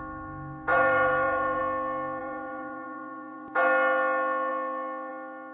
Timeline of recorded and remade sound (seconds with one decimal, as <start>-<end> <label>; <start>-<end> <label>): 0.0-0.7 recorded; 0.7-1.6 remade; 1.6-2.2 recorded; 2.2-3.5 remade; 3.5-5.5 recorded